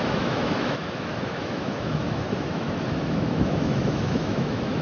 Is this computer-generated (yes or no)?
yes